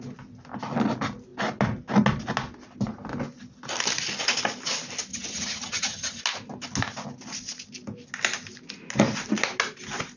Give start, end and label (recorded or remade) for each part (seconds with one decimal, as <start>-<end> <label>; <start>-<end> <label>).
0.0-5.1 recorded; 5.1-6.2 remade; 6.2-10.2 recorded

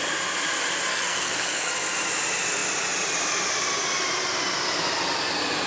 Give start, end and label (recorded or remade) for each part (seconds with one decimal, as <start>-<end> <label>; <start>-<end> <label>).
0.0-0.9 recorded; 0.9-1.7 remade; 1.7-5.7 recorded

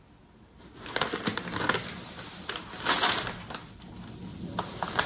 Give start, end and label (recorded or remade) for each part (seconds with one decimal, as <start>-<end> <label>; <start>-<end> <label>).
0.0-4.3 recorded; 4.3-5.1 remade

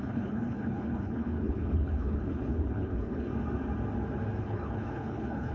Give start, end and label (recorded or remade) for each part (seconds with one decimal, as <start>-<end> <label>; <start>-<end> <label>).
0.0-3.3 remade; 3.3-4.4 recorded; 4.4-5.5 remade

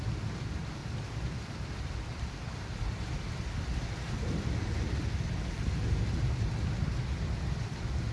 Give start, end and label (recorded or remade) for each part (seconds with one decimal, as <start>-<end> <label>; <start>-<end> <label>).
0.0-0.8 recorded; 0.8-3.1 remade; 3.1-8.1 recorded

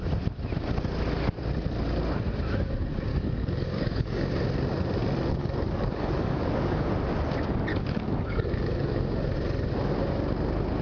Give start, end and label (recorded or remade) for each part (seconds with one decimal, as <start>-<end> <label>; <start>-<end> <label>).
0.0-3.1 recorded; 3.1-4.3 remade; 4.3-5.4 recorded; 5.4-6.9 remade; 6.9-7.7 recorded; 7.7-9.0 remade; 9.0-10.8 recorded